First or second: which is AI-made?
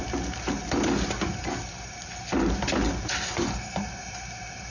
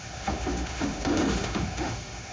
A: second